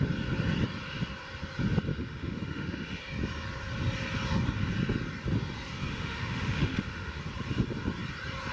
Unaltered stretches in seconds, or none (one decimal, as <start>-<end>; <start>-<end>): 0.0-1.9; 3.0-5.9; 7.2-8.5